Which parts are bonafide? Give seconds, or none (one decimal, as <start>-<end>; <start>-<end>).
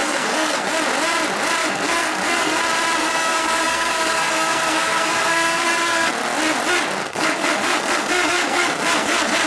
0.7-1.6; 2.6-3.0; 6.1-7.0